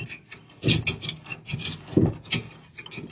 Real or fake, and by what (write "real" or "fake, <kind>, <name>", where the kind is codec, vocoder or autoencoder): real